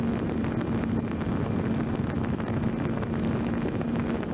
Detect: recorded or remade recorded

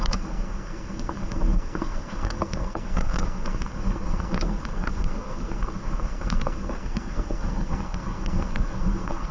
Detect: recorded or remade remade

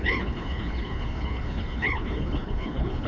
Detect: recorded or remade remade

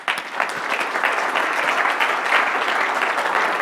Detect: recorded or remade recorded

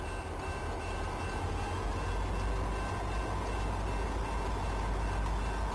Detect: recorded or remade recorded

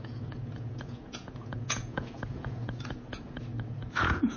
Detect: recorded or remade remade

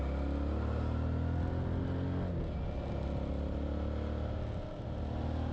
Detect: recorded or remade recorded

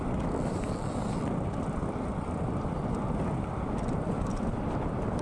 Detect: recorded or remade recorded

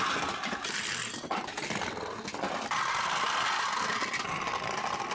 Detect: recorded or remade recorded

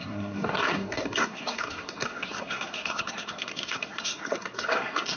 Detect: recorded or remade remade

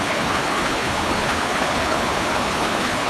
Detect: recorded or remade remade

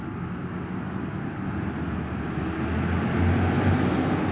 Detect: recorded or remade recorded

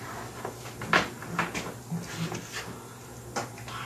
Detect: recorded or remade recorded